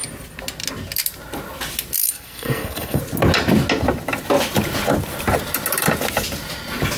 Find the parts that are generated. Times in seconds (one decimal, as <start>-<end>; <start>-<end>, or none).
2.0-3.0